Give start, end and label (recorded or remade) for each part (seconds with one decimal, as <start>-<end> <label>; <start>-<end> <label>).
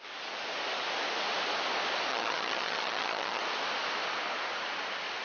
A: 0.0-2.1 recorded; 2.1-3.4 remade; 3.4-5.2 recorded